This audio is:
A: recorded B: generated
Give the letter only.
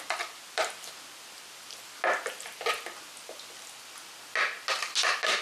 A